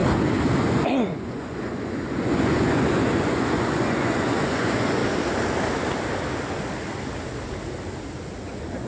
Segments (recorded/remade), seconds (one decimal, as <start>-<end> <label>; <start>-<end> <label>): 0.0-0.6 recorded; 0.6-5.0 remade; 5.0-8.5 recorded; 8.5-8.9 remade